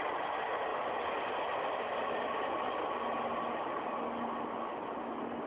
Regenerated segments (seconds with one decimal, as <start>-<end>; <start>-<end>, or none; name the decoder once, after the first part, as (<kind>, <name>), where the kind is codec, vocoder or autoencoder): none